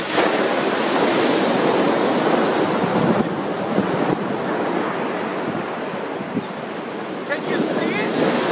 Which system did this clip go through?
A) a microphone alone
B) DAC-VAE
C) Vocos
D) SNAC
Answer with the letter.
A